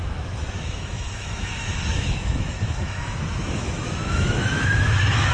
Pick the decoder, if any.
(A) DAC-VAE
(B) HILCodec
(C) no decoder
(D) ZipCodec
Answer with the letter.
A